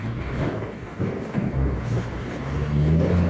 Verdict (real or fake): fake